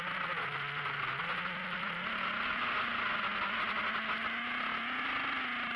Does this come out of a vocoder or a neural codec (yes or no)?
no